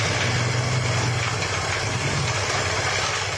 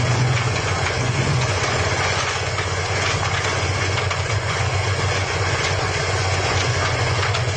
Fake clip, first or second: second